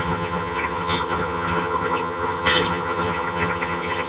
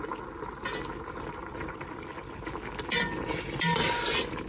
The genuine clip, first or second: second